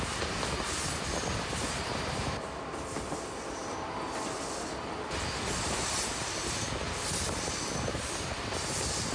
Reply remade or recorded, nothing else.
recorded